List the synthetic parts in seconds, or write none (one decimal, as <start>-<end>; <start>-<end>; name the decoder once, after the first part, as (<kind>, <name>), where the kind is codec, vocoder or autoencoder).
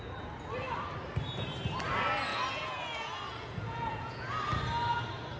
2.3-4.3 (vocoder, Vocos)